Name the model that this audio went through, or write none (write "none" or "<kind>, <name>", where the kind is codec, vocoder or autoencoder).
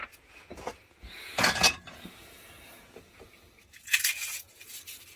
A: vocoder, Vocos